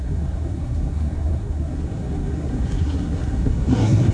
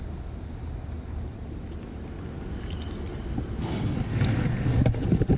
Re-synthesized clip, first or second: first